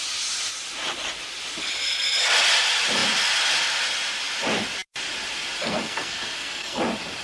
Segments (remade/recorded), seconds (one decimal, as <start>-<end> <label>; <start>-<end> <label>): 0.0-5.6 recorded; 5.6-6.8 remade; 6.8-7.2 recorded